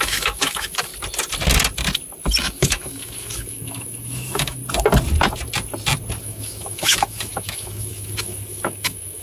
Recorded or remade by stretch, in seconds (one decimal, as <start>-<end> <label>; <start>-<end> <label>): 0.0-0.9 remade; 0.9-2.4 recorded; 2.4-4.6 remade; 4.6-6.2 recorded; 6.2-9.2 remade